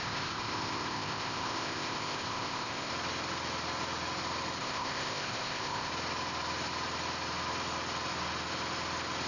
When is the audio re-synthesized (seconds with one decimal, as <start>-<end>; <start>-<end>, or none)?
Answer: 0.0-2.9; 4.6-5.9